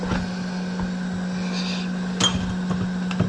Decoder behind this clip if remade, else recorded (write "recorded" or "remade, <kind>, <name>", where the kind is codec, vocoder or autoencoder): recorded